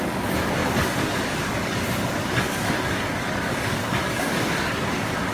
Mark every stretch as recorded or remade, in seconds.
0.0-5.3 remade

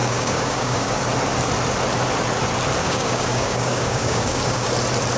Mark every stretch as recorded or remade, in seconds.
0.0-1.0 remade; 1.0-2.8 recorded; 2.8-4.7 remade; 4.7-5.2 recorded

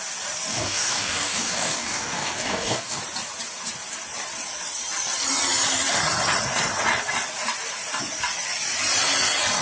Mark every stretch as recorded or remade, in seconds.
0.0-0.5 recorded; 0.5-3.0 remade; 3.0-9.6 recorded

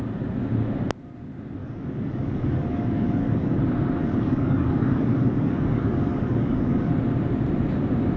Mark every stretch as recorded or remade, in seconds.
0.0-1.6 recorded; 1.6-3.6 remade; 3.6-4.0 recorded; 4.0-6.9 remade; 6.9-8.2 recorded

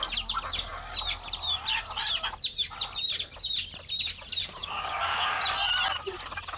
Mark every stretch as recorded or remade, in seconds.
0.0-4.6 recorded; 4.6-5.4 remade; 5.4-6.6 recorded

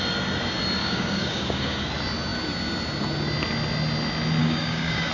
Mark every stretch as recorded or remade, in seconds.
0.0-0.8 recorded; 0.8-1.8 remade; 1.8-4.4 recorded; 4.4-5.1 remade